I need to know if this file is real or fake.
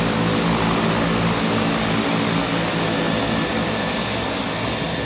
real